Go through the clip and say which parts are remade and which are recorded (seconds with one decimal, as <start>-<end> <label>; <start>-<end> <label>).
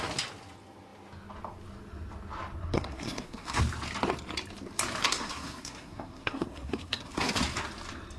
0.0-2.6 recorded; 2.6-3.6 remade; 3.6-5.0 recorded; 5.0-7.4 remade; 7.4-8.2 recorded